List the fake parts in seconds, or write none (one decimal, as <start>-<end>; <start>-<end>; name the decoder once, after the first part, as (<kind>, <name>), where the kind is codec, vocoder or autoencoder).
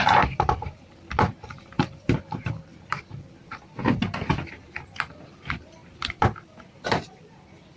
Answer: 0.0-3.4 (vocoder, BigVGAN v2); 5.1-5.8; 7.1-7.8